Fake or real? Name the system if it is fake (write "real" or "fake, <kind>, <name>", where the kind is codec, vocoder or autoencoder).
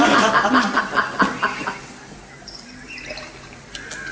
real